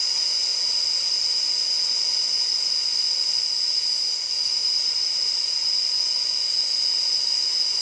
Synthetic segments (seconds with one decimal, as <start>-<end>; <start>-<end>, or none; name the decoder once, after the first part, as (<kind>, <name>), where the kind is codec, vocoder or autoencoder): 0.0-0.5 (vocoder, Vocos); 1.8-4.6; 5.4-7.8